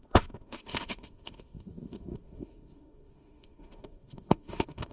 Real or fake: fake